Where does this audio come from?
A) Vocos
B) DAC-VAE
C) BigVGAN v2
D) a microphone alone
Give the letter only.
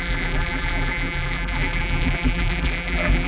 C